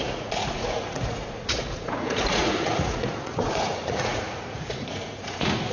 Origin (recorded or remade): remade